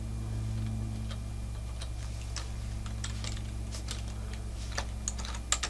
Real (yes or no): yes